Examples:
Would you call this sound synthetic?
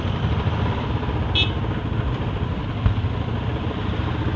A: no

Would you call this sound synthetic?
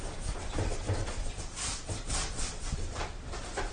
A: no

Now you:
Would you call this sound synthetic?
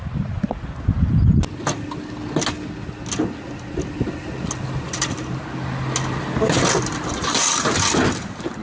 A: no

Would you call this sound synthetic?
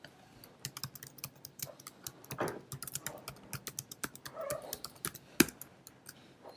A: no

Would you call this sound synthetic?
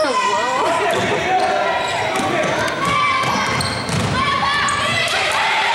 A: no